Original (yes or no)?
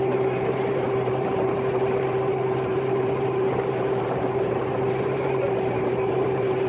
no